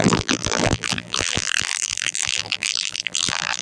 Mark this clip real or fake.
fake